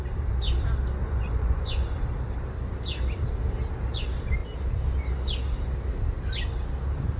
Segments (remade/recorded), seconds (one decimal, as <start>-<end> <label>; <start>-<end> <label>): 0.0-1.0 recorded; 1.0-2.0 remade; 2.0-7.2 recorded